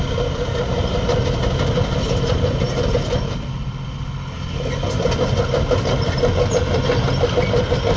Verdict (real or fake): real